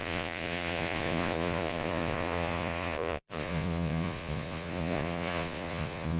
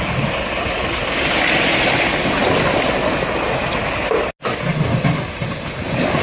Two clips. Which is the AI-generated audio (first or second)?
first